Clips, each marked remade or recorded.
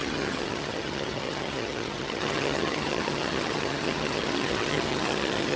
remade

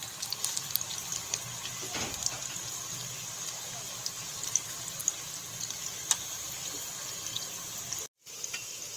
recorded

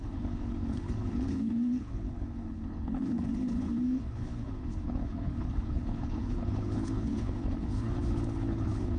remade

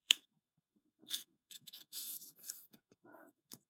remade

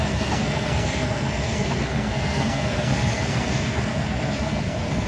remade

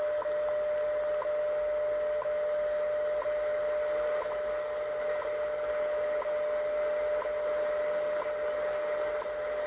recorded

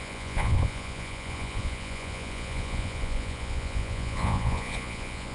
remade